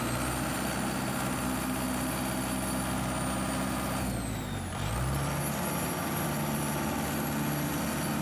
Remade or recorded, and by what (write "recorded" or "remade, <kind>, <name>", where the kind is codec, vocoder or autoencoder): recorded